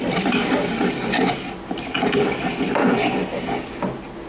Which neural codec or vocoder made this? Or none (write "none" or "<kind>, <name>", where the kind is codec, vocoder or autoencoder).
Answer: none